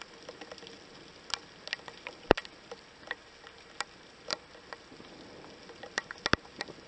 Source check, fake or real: real